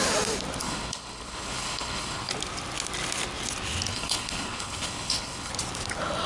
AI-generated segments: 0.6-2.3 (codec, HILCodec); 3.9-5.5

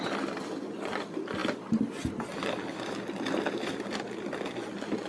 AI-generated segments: none

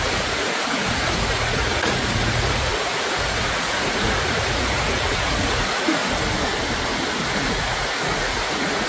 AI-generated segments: 0.0-6.0 (vocoder, Vocos); 7.4-8.9

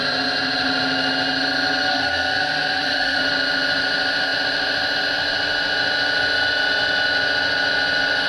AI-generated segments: 1.9-3.2 (codec, SNAC)

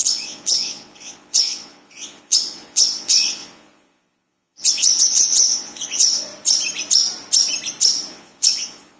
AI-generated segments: 0.0-6.3 (vocoder, Vocos); 8.1-9.0

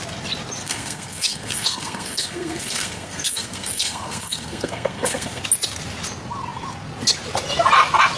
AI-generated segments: 0.6-5.4 (codec, SNAC)

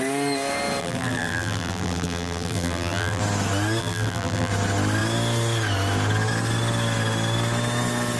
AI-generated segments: 0.8-3.2 (vocoder, BigVGAN v2); 3.8-4.5

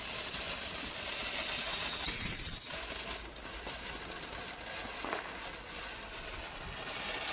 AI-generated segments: 1.7-2.7 (vocoder, Vocos)